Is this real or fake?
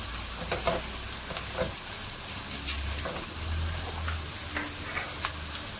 real